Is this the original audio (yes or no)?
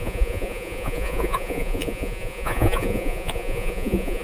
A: no